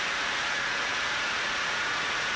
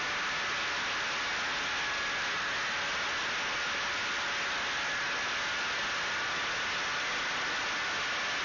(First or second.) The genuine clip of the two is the second